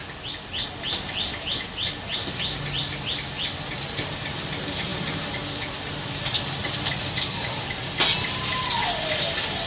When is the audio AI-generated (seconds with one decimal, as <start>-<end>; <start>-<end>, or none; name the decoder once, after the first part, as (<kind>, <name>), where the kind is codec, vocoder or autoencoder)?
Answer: none